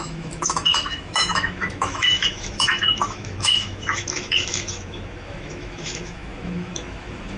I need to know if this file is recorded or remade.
remade